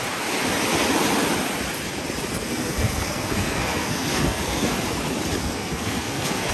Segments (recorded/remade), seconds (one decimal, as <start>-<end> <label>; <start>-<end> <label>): 0.0-2.3 recorded; 2.3-4.8 remade; 4.8-5.4 recorded; 5.4-6.5 remade